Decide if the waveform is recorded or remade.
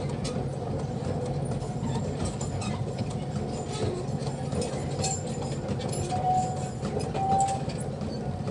recorded